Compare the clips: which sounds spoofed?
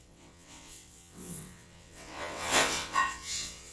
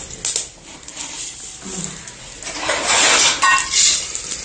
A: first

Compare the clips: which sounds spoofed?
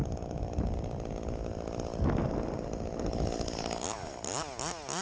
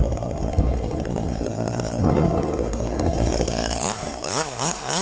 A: second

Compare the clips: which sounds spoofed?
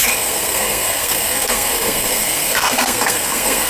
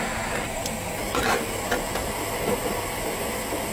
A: first